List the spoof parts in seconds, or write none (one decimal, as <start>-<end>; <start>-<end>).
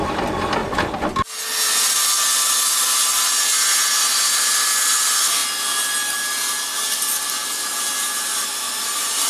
none